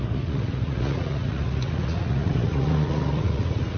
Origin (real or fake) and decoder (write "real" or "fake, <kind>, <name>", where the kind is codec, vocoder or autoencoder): fake, vocoder, Vocos